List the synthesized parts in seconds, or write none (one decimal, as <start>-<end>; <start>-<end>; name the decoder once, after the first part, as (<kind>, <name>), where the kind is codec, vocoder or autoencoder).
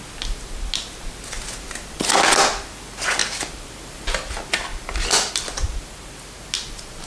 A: none